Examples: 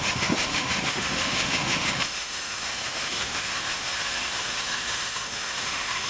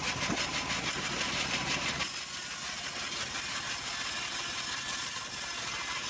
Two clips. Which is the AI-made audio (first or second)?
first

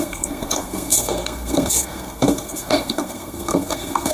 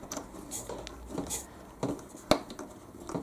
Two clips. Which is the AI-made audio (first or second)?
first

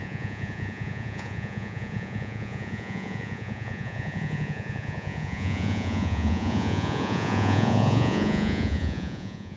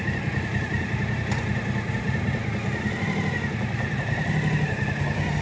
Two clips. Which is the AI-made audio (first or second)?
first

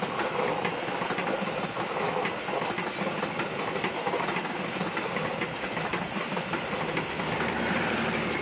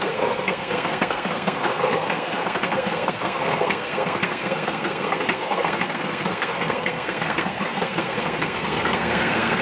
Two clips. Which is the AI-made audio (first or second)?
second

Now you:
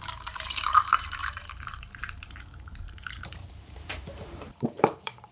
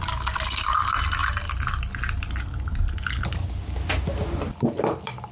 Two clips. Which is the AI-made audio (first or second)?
first